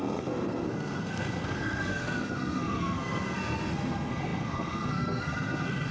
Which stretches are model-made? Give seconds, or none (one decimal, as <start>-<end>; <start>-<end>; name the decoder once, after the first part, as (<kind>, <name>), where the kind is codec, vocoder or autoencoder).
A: 0.0-5.9 (codec, SNAC)